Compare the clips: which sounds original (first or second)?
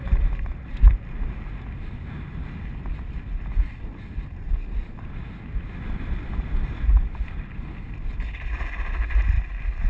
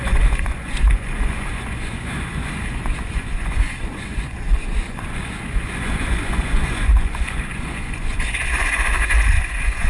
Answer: first